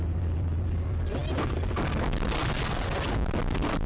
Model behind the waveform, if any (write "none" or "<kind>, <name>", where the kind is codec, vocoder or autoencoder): none